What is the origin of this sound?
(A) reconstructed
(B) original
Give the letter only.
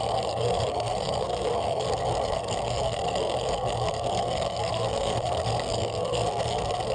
A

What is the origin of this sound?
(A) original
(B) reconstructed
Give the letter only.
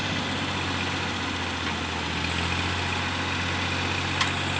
A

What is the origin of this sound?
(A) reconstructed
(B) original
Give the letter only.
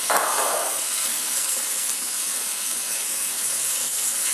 A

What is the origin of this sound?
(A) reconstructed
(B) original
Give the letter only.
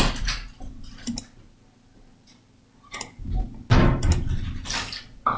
B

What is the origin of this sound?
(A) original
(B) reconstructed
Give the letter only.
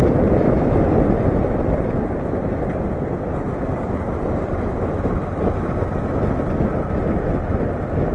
A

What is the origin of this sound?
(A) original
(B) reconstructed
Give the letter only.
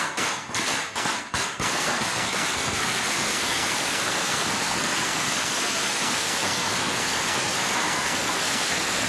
B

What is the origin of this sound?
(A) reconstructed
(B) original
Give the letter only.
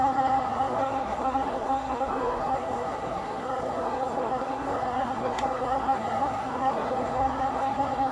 A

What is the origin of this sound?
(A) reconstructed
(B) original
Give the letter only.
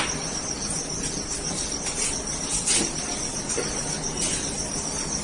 B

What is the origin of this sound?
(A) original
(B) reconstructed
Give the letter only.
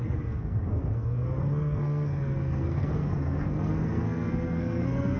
B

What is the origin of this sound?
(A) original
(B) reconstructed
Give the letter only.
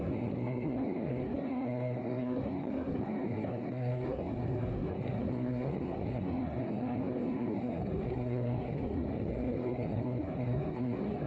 B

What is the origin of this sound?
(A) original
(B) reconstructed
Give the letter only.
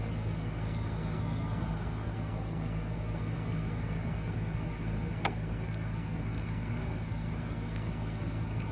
B